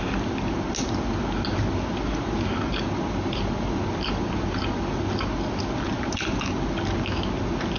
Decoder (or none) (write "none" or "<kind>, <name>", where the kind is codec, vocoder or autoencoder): none